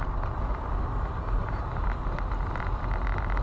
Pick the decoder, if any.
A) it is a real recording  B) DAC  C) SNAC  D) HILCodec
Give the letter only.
A